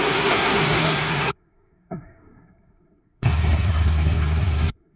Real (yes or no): no